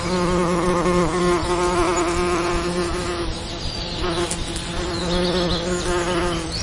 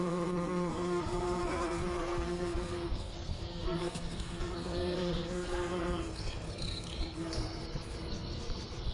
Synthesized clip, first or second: second